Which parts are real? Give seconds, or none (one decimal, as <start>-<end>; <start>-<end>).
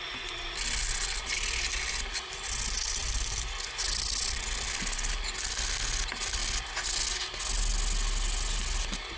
0.0-9.2